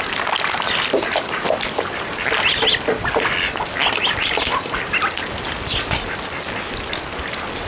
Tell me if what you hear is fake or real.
real